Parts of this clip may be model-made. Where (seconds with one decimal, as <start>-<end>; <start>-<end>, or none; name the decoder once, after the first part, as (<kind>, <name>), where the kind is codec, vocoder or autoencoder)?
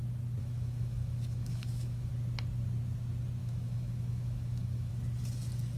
0.4-2.1 (autoencoder, DAC-VAE); 3.4-4.9